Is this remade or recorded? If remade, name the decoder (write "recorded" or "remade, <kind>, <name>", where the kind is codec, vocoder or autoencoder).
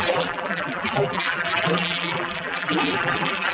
remade, vocoder, BigVGAN v2